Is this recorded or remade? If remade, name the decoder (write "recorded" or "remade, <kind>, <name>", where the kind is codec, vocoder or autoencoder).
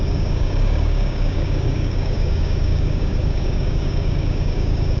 remade, codec, DAC